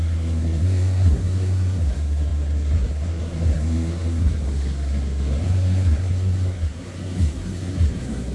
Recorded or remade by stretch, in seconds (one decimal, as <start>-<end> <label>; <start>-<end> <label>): 0.0-8.3 remade